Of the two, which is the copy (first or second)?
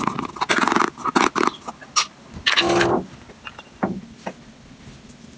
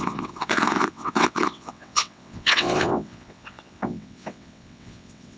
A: second